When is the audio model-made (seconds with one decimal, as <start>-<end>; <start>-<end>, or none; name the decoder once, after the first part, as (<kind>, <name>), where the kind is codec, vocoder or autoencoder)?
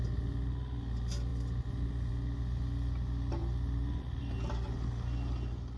1.3-2.1 (vocoder, BigVGAN v2); 3.4-4.2